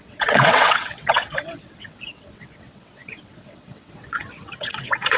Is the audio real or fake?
fake